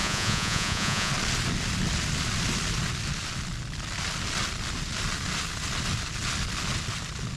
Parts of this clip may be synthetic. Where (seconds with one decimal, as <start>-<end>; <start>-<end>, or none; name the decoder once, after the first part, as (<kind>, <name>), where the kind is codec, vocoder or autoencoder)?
0.0-1.1 (vocoder, Vocos)